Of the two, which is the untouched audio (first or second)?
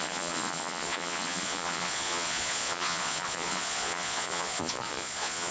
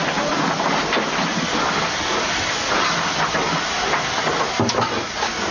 second